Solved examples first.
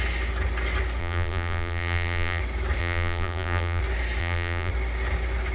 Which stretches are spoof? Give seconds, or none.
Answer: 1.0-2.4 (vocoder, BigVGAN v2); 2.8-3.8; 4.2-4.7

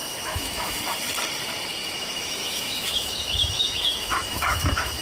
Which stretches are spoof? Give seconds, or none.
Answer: 0.0-0.8 (autoencoder, DAC-VAE); 1.8-5.0